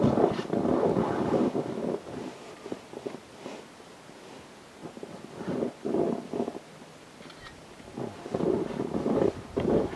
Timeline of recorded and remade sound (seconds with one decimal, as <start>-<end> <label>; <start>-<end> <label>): 0.0-10.0 recorded